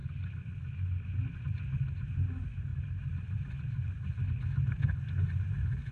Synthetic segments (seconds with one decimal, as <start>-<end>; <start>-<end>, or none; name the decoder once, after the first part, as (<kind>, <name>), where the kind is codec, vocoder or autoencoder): 2.7-4.3 (vocoder, BigVGAN v2)